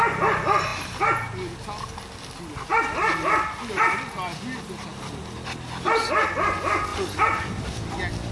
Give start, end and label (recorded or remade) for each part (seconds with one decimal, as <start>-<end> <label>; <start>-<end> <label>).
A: 0.0-2.7 recorded; 2.7-4.1 remade; 4.1-8.3 recorded